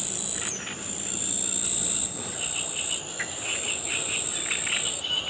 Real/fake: real